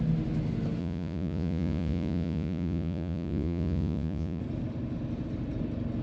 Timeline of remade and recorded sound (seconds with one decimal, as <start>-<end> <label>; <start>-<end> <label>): 0.0-0.8 recorded; 0.8-4.4 remade; 4.4-6.0 recorded